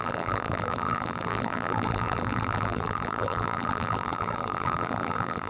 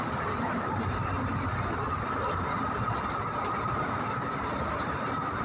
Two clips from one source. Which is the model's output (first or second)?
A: first